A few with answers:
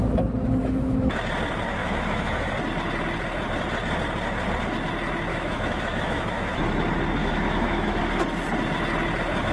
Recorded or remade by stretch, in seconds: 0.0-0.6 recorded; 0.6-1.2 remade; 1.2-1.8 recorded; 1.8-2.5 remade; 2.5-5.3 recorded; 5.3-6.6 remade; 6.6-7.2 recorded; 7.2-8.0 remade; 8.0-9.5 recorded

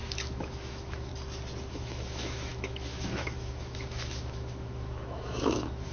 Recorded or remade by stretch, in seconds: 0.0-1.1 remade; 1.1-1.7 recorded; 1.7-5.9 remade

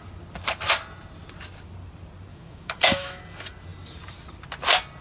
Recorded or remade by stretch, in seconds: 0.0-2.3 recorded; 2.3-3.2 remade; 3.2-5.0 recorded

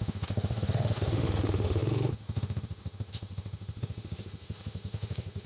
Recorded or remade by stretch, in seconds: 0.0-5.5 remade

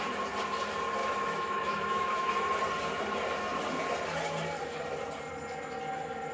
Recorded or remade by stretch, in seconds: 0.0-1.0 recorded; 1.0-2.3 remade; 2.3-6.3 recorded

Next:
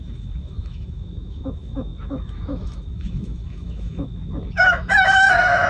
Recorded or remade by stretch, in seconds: 0.0-5.7 remade

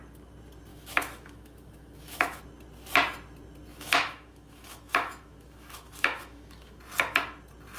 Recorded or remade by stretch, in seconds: 0.0-0.7 recorded; 0.7-2.4 remade; 2.4-3.7 recorded; 3.7-6.8 remade; 6.8-7.8 recorded

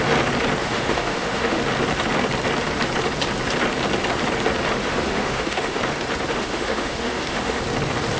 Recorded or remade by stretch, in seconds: 0.0-0.6 recorded; 0.6-1.6 remade; 1.6-4.8 recorded; 4.8-5.8 remade; 5.8-6.3 recorded; 6.3-7.6 remade; 7.6-8.2 recorded